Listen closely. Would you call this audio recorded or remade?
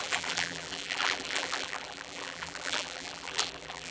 remade